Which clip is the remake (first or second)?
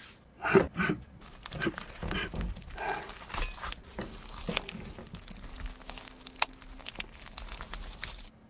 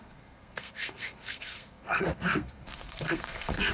second